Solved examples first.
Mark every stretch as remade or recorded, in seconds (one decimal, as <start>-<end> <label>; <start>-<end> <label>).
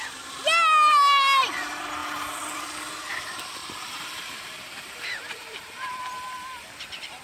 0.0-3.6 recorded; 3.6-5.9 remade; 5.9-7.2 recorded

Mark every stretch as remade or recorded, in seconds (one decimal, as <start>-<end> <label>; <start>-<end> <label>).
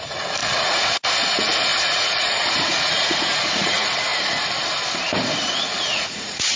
0.0-4.1 remade; 4.1-5.8 recorded; 5.8-6.6 remade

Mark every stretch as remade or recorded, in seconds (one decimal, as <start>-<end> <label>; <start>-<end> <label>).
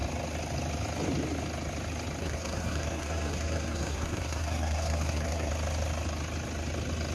0.0-2.2 recorded; 2.2-5.5 remade; 5.5-7.1 recorded